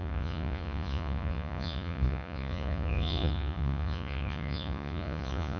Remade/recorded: remade